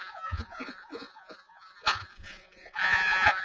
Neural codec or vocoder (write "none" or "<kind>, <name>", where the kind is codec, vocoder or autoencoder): vocoder, Vocos